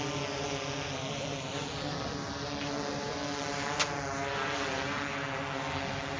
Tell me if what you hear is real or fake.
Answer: real